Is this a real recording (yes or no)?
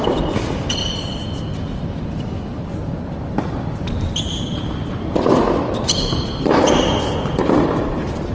no